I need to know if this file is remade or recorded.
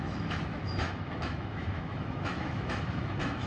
remade